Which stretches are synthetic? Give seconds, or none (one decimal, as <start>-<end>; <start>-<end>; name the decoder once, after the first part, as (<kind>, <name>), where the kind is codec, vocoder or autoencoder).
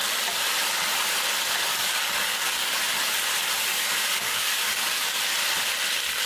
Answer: 1.7-2.8 (codec, DAC); 3.7-5.2